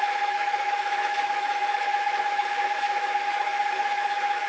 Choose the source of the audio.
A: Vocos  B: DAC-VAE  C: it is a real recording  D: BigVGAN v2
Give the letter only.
B